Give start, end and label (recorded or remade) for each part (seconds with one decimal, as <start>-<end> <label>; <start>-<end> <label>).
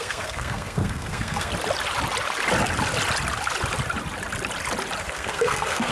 0.0-1.5 remade; 1.5-5.0 recorded; 5.0-5.9 remade